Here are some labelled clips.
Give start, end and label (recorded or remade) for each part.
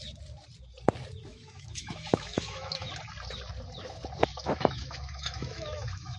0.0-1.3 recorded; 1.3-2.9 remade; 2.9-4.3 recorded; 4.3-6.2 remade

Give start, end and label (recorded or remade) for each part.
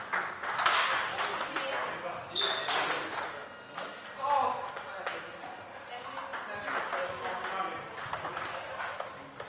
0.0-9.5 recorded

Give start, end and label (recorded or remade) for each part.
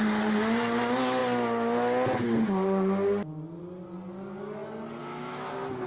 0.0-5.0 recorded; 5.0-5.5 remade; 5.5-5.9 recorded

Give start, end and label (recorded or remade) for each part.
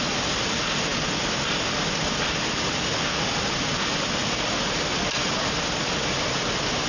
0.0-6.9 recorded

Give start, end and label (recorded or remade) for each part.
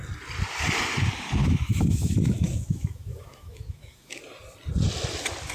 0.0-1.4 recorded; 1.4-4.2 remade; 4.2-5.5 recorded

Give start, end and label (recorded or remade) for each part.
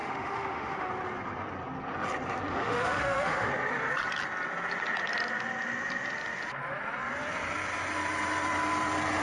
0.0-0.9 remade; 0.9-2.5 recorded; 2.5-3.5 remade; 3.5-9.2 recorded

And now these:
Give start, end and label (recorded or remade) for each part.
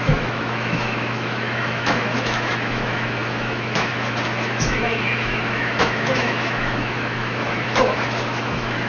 0.0-8.9 remade